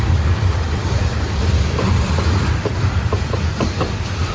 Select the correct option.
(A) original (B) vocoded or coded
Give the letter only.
B